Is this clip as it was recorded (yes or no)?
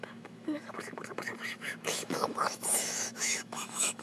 no